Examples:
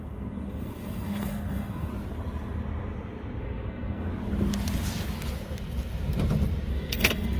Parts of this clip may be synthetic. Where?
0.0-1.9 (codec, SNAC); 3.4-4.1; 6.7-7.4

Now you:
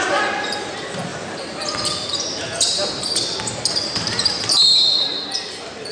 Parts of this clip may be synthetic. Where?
1.1-4.6 (vocoder, BigVGAN v2)

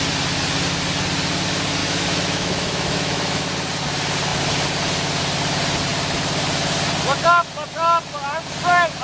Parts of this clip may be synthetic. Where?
1.8-3.5 (autoencoder, DAC-VAE)

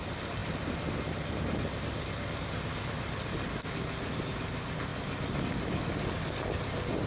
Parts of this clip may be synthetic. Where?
none